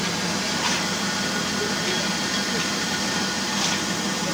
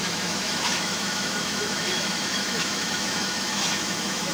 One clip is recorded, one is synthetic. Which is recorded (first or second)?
first